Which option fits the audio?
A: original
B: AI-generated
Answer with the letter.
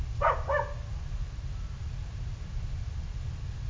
A